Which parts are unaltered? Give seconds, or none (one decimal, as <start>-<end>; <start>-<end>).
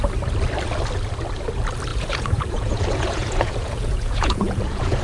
0.0-1.9